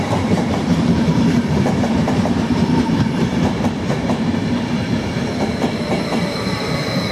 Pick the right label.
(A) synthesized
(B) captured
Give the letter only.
A